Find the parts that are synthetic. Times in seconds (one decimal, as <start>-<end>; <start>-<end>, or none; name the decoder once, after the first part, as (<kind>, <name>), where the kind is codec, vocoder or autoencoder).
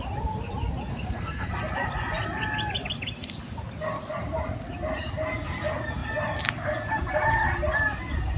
0.9-1.5 (codec, SNAC)